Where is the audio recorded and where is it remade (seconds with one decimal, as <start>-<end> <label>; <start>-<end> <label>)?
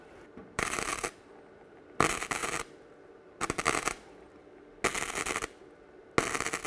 0.0-0.4 recorded; 0.4-1.3 remade; 1.3-2.4 recorded; 2.4-4.2 remade; 4.2-4.9 recorded; 4.9-5.6 remade; 5.6-6.7 recorded